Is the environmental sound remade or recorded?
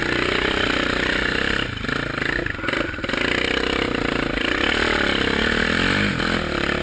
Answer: recorded